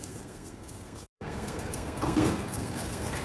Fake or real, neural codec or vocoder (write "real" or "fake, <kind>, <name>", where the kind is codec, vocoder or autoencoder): fake, codec, SNAC